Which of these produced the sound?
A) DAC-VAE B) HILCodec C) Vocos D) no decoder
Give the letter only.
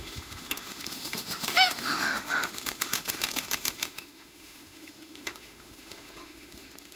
A